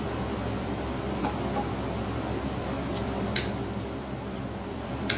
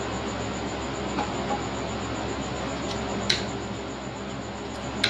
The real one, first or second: second